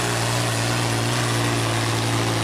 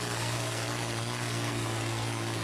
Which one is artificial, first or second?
second